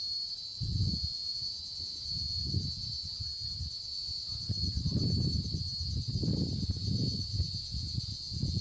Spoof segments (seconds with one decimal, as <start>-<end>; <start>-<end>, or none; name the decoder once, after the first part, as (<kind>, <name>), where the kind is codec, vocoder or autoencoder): 0.7-2.8 (vocoder, Vocos); 4.0-4.8; 6.8-8.6